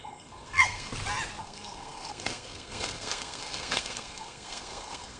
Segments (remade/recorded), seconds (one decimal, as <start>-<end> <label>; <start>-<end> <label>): 0.0-0.9 remade; 0.9-1.4 recorded; 1.4-5.2 remade